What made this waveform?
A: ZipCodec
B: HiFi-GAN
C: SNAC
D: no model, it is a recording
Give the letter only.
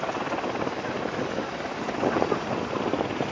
D